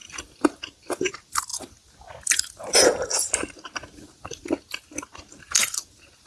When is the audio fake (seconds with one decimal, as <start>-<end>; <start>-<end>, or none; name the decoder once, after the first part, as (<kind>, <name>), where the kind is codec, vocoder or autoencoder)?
none